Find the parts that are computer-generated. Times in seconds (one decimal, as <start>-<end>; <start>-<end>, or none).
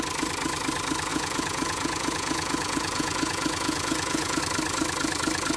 1.1-4.4